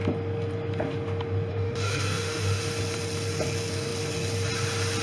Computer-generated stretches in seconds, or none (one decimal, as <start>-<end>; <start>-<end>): 1.5-2.7